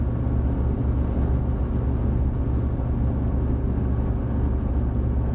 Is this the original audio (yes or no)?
yes